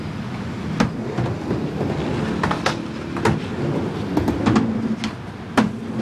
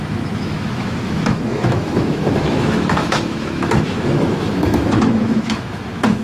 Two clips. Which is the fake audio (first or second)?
second